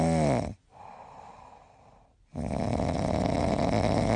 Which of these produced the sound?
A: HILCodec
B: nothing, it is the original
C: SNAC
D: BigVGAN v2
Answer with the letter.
B